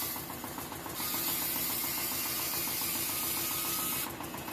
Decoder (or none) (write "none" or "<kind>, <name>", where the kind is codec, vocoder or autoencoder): none